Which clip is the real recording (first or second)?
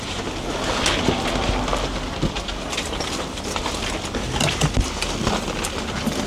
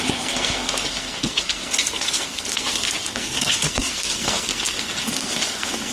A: first